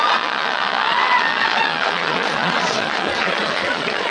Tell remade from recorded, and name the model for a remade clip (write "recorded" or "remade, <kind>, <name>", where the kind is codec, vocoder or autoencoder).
remade, vocoder, Vocos